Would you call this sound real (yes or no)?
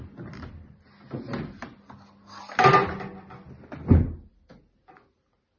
yes